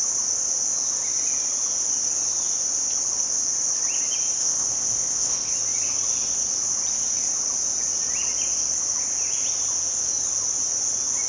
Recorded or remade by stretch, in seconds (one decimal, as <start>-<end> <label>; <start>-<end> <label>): 0.0-4.4 recorded; 4.4-5.5 remade; 5.5-11.3 recorded